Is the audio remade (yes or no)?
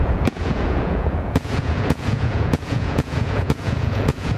yes